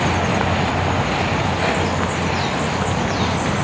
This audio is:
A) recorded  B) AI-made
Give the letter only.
A